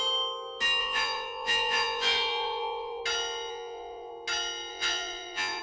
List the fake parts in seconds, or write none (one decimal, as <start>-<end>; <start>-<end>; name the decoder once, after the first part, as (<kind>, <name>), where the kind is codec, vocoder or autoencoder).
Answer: 0.8-3.0 (vocoder, Vocos); 3.5-4.1; 4.7-5.6